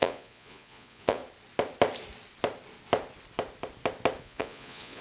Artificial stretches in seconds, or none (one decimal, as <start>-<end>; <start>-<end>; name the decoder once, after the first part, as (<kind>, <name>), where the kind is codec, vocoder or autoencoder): 0.0-1.2 (vocoder, Vocos); 4.2-5.0